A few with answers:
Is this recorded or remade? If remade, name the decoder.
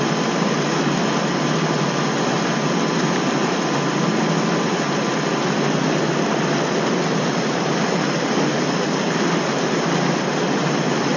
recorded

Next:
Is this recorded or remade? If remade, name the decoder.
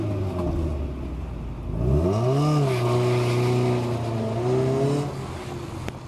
recorded